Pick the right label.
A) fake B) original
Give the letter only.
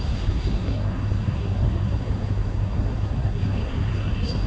A